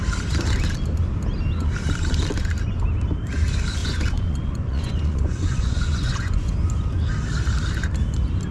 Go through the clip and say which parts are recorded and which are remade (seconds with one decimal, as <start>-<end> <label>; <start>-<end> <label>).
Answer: 0.0-3.8 recorded; 3.8-6.5 remade; 6.5-8.5 recorded

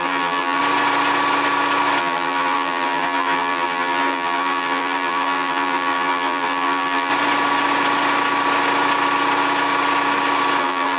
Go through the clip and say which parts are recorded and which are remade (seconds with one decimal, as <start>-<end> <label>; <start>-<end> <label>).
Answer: 0.0-0.6 remade; 0.6-2.0 recorded; 2.0-7.1 remade; 7.1-10.6 recorded; 10.6-11.0 remade